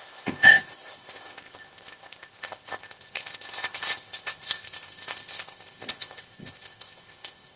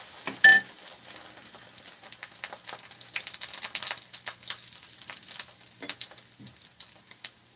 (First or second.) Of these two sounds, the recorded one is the second